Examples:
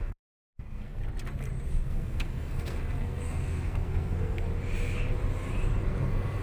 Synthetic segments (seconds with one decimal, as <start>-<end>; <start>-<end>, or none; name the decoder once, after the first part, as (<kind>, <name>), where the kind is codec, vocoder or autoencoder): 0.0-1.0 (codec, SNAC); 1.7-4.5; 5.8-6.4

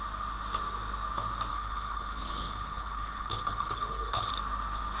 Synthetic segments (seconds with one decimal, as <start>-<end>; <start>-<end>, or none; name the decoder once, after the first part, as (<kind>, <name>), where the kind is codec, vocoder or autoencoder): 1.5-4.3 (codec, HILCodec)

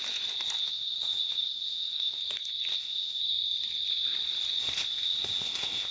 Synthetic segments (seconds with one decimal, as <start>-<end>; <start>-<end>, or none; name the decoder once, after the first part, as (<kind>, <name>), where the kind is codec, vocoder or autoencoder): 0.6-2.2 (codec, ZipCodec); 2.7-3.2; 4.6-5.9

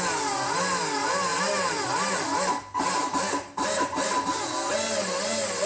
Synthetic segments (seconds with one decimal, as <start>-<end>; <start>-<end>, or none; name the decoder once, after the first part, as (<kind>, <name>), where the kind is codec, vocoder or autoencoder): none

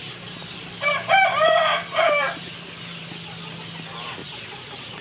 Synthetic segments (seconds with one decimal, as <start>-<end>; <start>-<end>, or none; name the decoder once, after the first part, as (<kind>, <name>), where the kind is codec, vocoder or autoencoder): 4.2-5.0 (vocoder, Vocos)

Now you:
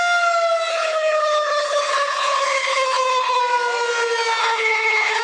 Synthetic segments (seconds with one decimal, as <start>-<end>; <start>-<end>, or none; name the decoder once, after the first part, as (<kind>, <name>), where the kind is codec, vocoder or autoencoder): 0.7-3.4 (codec, HILCodec); 4.4-5.2

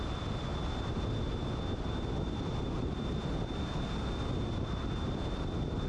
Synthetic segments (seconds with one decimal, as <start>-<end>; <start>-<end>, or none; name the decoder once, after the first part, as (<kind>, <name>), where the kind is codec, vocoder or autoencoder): none